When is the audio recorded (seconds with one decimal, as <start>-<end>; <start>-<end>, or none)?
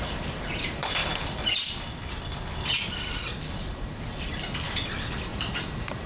0.0-5.3